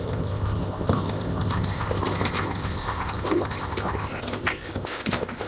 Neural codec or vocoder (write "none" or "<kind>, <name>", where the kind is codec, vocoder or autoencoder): codec, ZipCodec